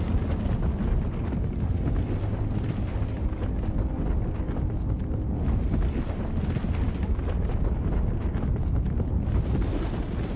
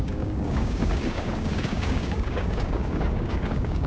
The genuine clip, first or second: first